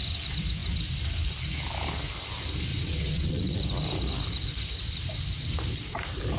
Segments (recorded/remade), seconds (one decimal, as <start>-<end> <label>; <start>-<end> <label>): 0.0-2.7 recorded; 2.7-3.6 remade; 3.6-6.4 recorded

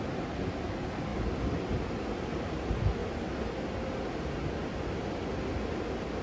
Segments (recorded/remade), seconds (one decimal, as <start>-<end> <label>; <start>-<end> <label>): 0.0-6.2 recorded

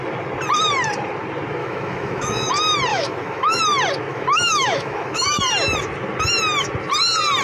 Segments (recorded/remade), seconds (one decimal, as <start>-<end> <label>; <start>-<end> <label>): 0.0-1.6 recorded; 1.6-2.5 remade; 2.5-2.9 recorded; 2.9-3.6 remade; 3.6-4.1 recorded; 4.1-5.4 remade; 5.4-7.4 recorded

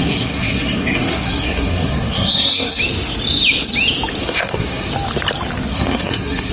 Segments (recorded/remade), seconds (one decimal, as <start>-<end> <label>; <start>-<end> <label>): 0.0-2.8 remade; 2.8-4.2 recorded; 4.2-4.9 remade; 4.9-5.7 recorded; 5.7-6.5 remade

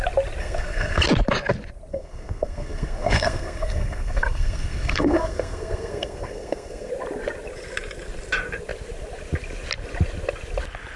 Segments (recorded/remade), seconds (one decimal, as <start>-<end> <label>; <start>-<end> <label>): 0.0-0.4 recorded; 0.4-1.0 remade; 1.0-1.9 recorded; 1.9-6.9 remade; 6.9-11.0 recorded

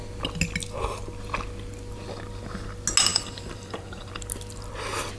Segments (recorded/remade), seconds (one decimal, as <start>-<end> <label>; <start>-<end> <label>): 0.0-3.1 recorded; 3.1-4.1 remade; 4.1-5.2 recorded